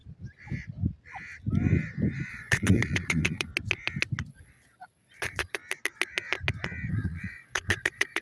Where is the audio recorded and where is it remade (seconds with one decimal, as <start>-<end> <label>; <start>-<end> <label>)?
0.0-2.3 recorded; 2.3-3.5 remade; 3.5-4.3 recorded; 4.3-5.6 remade; 5.6-6.9 recorded; 6.9-8.2 remade